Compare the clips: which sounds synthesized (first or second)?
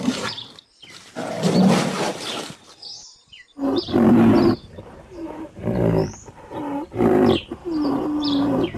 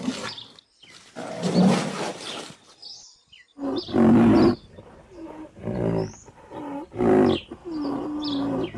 first